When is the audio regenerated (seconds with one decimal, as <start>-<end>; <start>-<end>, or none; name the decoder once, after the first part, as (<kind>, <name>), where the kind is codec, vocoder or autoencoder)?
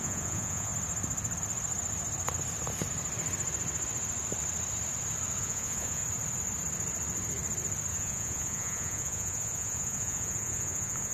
0.0-0.7 (vocoder, Vocos); 5.4-6.0; 7.9-11.1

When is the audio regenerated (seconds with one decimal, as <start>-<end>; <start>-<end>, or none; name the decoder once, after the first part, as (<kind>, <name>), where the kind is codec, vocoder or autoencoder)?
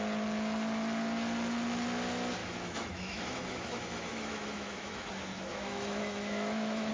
2.4-5.1 (autoencoder, DAC-VAE); 5.5-6.9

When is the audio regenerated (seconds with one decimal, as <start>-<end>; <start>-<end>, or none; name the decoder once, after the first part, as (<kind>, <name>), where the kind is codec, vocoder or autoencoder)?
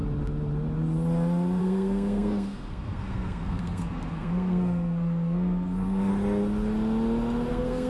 1.6-6.1 (codec, SNAC); 7.5-7.9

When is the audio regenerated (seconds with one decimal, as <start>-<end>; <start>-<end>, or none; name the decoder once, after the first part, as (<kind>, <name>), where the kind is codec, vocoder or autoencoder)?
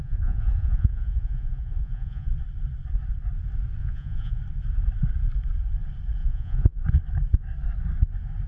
0.0-2.3 (vocoder, Vocos); 3.8-4.4; 6.2-6.8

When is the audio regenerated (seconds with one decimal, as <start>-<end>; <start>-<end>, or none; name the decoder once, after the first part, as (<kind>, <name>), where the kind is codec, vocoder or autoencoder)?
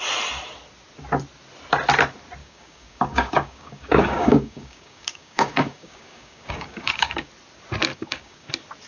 2.4-7.3 (codec, DAC); 7.9-8.5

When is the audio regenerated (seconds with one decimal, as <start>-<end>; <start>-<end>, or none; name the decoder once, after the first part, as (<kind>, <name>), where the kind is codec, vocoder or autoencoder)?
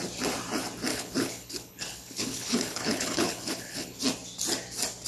0.9-4.0 (codec, HILCodec)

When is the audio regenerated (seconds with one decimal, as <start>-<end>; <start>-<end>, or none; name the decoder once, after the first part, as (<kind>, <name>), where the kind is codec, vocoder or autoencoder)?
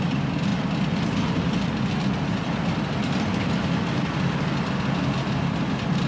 none